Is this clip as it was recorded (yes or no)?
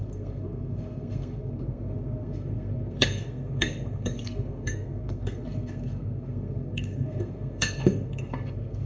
no